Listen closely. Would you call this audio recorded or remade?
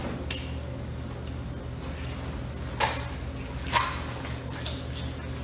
recorded